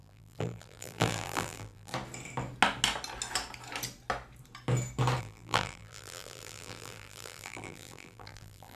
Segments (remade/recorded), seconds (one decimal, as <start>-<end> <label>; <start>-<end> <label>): 0.0-1.9 remade; 1.9-5.2 recorded; 5.2-8.8 remade